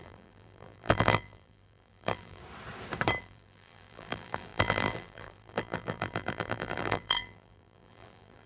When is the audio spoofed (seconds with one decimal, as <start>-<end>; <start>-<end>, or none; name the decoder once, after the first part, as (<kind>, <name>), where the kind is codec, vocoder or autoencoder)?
0.0-2.4 (vocoder, BigVGAN v2); 3.2-8.5